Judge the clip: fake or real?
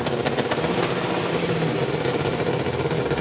real